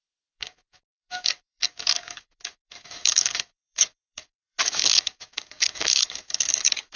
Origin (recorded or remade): remade